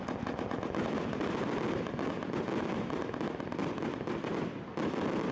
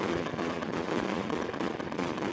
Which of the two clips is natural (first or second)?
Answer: first